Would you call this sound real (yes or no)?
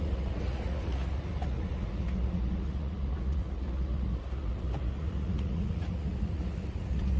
no